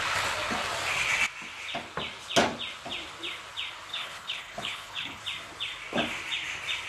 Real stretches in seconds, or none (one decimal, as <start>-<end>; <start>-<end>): 0.0-3.9; 5.2-6.9